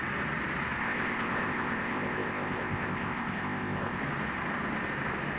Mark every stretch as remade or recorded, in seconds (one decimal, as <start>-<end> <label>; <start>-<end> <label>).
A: 0.0-0.8 recorded; 0.8-4.0 remade; 4.0-5.4 recorded